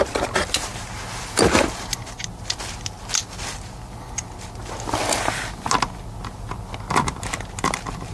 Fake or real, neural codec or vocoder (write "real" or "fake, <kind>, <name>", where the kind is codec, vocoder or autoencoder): real